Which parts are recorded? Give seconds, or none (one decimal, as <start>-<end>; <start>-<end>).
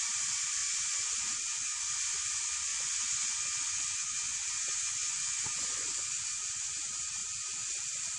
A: 0.0-0.6; 1.7-2.7; 6.7-8.2